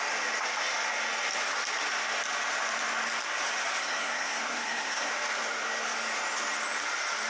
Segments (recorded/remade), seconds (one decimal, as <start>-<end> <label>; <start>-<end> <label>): 0.0-3.8 recorded; 3.8-5.1 remade; 5.1-7.3 recorded